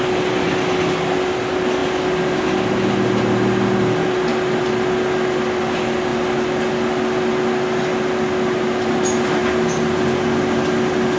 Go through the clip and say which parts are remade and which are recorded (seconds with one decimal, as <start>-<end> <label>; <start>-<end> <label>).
0.0-11.2 recorded

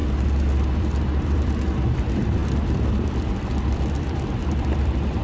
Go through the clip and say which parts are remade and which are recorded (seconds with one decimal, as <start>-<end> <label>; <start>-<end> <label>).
0.0-0.8 recorded; 0.8-5.2 remade

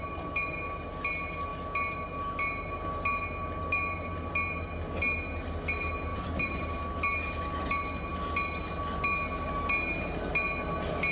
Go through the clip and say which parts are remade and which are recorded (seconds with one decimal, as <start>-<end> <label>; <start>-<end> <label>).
0.0-6.1 recorded; 6.1-6.8 remade; 6.8-11.1 recorded

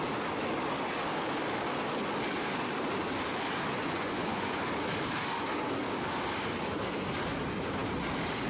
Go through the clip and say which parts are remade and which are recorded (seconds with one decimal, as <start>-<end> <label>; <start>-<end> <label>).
0.0-3.8 recorded; 3.8-4.6 remade; 4.6-8.5 recorded

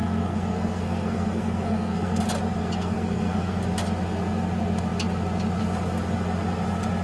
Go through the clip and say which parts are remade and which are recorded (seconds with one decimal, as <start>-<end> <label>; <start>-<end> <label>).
0.0-2.2 remade; 2.2-2.6 recorded; 2.6-3.6 remade; 3.6-7.0 recorded